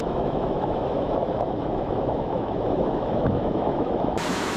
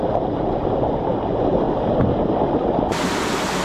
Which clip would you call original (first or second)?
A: second